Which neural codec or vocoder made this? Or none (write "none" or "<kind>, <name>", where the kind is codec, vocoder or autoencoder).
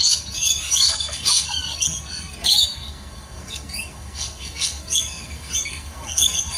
codec, SNAC